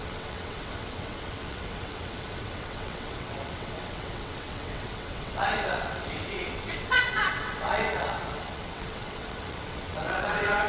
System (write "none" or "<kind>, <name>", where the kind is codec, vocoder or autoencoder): vocoder, WaveNeXt